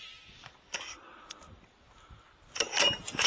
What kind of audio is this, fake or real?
real